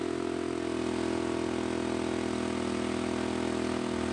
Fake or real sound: real